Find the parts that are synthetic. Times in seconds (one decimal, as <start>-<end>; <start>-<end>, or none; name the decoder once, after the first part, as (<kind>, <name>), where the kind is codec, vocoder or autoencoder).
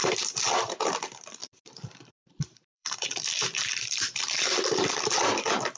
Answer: 1.4-4.2 (vocoder, BigVGAN v2)